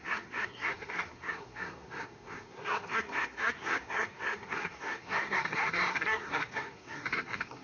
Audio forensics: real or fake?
fake